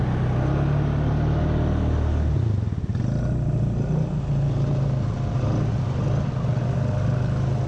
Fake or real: real